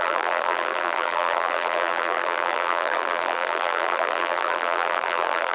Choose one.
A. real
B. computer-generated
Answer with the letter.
B